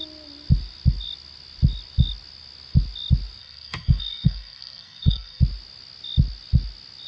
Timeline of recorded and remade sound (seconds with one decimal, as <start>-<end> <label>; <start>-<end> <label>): 0.0-3.4 recorded; 3.4-5.4 remade; 5.4-7.1 recorded